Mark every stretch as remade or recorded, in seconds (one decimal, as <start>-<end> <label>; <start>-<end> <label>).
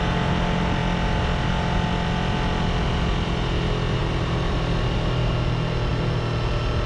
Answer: 0.0-6.9 recorded